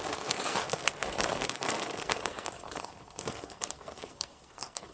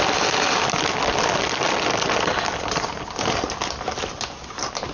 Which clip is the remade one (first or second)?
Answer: first